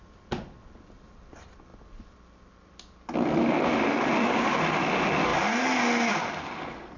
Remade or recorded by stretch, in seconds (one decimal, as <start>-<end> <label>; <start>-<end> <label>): 0.0-7.0 recorded